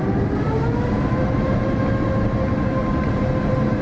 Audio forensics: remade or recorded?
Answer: recorded